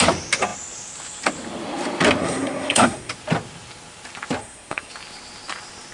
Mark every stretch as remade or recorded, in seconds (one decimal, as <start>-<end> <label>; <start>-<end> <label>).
0.0-2.2 recorded; 2.2-3.1 remade; 3.1-4.4 recorded; 4.4-4.9 remade; 4.9-5.9 recorded